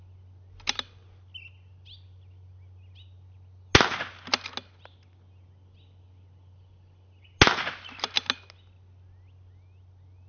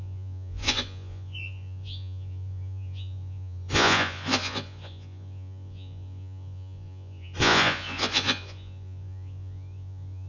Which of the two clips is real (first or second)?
first